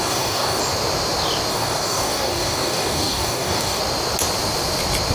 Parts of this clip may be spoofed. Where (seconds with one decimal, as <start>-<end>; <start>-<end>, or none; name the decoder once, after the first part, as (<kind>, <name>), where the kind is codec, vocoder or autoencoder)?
0.0-0.6 (codec, DAC); 1.5-3.8